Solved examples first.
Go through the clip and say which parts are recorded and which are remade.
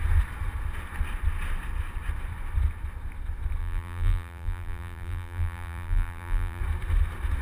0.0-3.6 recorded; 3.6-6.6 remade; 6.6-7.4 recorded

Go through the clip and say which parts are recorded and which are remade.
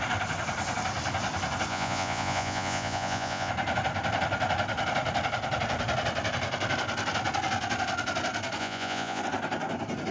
0.0-1.7 recorded; 1.7-3.5 remade; 3.5-8.6 recorded; 8.6-9.2 remade; 9.2-10.1 recorded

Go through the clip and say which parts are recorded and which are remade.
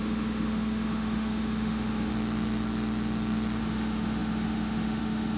0.0-2.1 remade; 2.1-3.6 recorded; 3.6-5.4 remade